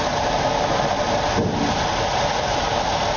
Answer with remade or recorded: recorded